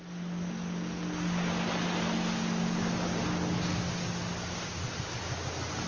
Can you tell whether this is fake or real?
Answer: real